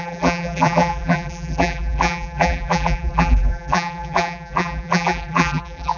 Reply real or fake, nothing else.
fake